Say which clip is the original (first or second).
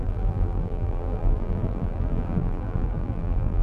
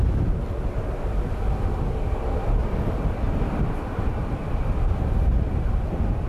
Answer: second